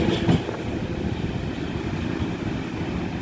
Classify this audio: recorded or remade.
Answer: recorded